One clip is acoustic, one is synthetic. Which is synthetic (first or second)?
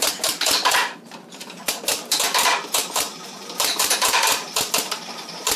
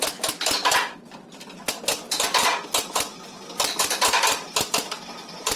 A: first